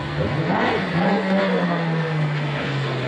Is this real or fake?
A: fake